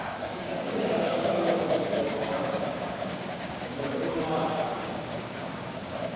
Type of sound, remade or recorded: remade